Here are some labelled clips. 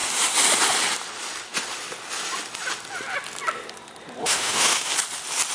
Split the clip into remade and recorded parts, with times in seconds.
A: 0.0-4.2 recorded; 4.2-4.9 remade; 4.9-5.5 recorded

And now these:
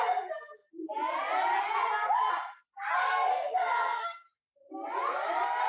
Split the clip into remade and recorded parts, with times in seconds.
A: 0.0-3.3 recorded; 3.3-4.7 remade; 4.7-5.7 recorded

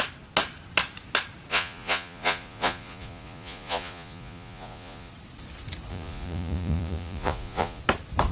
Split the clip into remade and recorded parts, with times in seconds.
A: 0.0-1.5 recorded; 1.5-5.1 remade; 5.1-5.9 recorded; 5.9-7.8 remade; 7.8-8.3 recorded

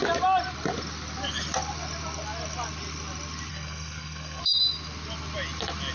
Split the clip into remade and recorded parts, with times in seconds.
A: 0.0-3.5 recorded; 3.5-4.4 remade; 4.4-5.9 recorded

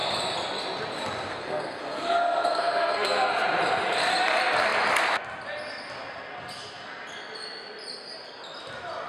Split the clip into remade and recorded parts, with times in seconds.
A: 0.0-1.3 recorded; 1.3-3.3 remade; 3.3-9.1 recorded

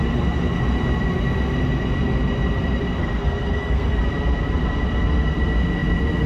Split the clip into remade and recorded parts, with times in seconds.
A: 0.0-3.0 recorded; 3.0-4.0 remade; 4.0-6.3 recorded